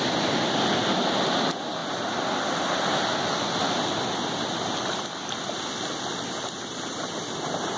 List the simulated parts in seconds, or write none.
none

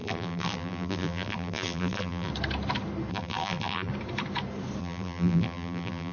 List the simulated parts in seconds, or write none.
0.0-2.3 (vocoder, BigVGAN v2); 3.1-3.9; 4.8-6.1